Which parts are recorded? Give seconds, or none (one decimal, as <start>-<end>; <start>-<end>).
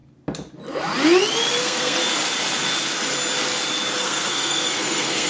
0.0-1.6; 2.0-4.0